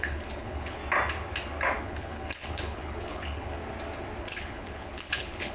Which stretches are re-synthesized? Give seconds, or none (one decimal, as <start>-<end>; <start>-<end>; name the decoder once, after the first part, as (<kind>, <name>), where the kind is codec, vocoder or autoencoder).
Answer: 0.0-0.8 (codec, HILCodec); 1.8-3.6; 4.2-5.5